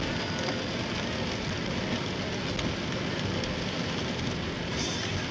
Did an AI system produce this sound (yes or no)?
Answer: no